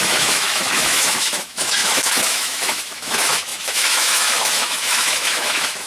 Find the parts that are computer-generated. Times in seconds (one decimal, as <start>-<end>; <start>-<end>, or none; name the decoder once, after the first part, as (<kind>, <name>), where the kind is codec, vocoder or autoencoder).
0.0-5.9 (autoencoder, DAC-VAE)